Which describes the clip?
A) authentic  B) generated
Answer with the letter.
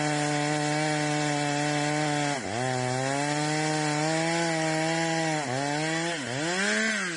A